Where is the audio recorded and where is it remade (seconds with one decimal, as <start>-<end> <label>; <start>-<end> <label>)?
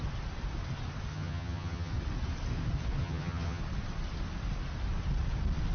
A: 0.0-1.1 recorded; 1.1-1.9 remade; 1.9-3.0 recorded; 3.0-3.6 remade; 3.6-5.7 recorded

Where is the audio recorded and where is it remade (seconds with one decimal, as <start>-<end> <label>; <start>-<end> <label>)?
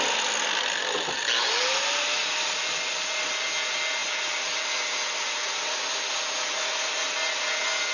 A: 0.0-7.9 recorded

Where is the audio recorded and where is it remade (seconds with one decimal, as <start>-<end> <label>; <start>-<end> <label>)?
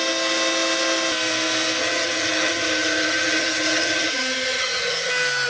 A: 0.0-1.8 recorded; 1.8-5.1 remade; 5.1-5.5 recorded